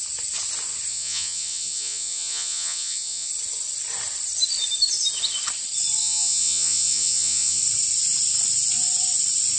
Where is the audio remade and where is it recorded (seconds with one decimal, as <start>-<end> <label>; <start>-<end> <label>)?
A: 0.0-0.9 recorded; 0.9-3.3 remade; 3.3-6.0 recorded; 6.0-7.6 remade; 7.6-9.6 recorded